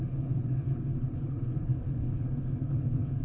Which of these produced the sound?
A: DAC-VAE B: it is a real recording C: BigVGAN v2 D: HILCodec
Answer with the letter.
D